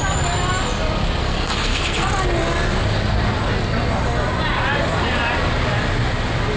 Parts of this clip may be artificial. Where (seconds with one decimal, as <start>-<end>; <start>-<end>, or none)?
1.2-2.1